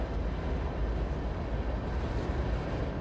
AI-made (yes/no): no